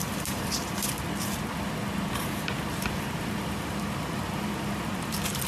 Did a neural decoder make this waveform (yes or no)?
yes